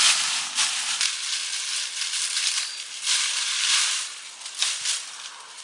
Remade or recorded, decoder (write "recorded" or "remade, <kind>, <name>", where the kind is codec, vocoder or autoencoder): recorded